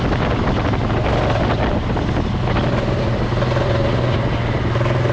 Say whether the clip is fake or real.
real